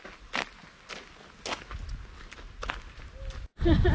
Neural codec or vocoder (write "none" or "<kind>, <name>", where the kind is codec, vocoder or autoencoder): none